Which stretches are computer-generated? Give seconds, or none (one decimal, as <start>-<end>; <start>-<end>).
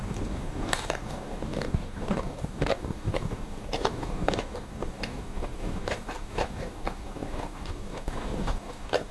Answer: 0.0-9.1